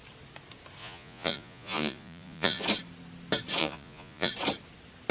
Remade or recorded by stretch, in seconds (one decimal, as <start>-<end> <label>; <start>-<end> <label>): 0.0-0.8 recorded; 0.8-2.6 remade; 2.6-3.6 recorded; 3.6-4.3 remade; 4.3-5.1 recorded